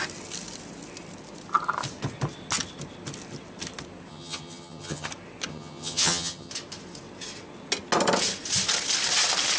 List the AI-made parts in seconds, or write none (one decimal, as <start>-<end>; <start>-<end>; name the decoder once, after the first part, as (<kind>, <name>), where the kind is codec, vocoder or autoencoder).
4.1-5.1 (vocoder, HiFi-GAN); 5.5-6.5